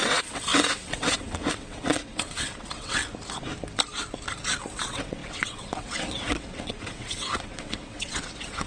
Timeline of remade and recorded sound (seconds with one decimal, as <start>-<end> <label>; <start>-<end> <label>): 0.0-3.0 remade; 3.0-4.8 recorded; 4.8-8.7 remade